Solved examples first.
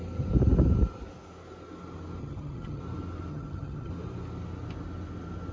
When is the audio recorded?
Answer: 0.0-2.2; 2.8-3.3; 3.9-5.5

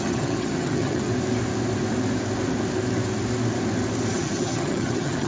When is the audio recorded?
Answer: 1.1-4.1

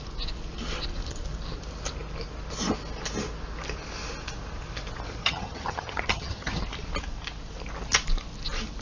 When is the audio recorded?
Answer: 0.0-5.2; 6.6-8.8

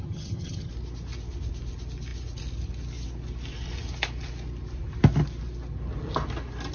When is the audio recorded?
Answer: 0.7-6.7

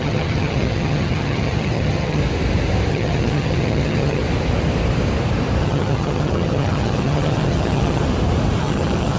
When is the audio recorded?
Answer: 2.2-2.9; 4.2-5.6; 8.0-8.6

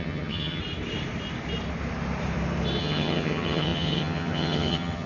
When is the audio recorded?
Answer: 0.6-2.8